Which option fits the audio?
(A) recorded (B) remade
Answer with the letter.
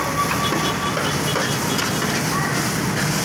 A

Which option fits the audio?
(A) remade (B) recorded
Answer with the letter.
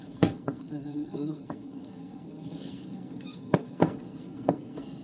A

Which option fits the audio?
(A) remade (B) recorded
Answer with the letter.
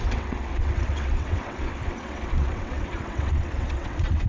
A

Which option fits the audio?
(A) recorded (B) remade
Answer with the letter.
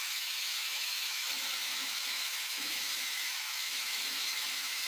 B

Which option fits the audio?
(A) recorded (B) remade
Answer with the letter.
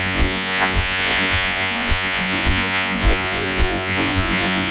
B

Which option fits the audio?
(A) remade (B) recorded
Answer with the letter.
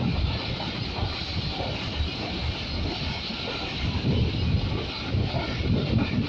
B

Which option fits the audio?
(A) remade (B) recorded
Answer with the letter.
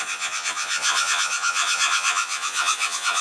A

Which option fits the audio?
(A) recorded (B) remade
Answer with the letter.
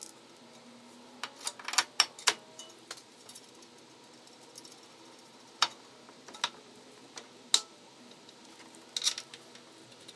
A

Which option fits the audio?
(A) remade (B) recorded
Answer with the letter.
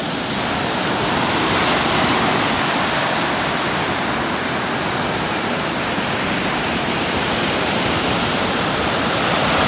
A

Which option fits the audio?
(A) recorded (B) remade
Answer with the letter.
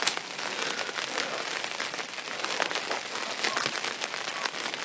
A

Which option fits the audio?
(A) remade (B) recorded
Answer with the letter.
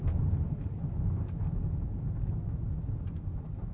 B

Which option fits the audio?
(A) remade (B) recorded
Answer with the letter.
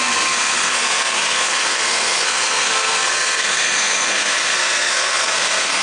A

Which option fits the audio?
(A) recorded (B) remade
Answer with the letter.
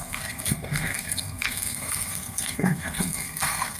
B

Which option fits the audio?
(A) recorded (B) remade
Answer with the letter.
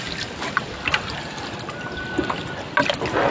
A